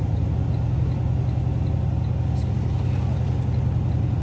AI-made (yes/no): no